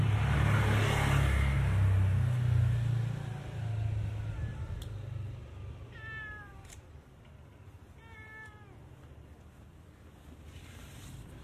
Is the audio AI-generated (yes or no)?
no